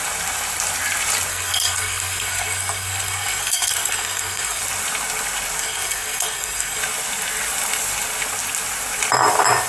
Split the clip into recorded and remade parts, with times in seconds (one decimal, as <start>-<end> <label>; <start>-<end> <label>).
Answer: 0.0-1.3 recorded; 1.3-4.6 remade; 4.6-5.6 recorded; 5.6-6.8 remade; 6.8-9.7 recorded